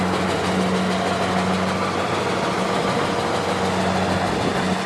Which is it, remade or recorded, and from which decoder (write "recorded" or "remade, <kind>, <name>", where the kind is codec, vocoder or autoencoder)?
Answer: recorded